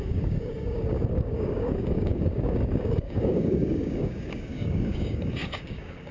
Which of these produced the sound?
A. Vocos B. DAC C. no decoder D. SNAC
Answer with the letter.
B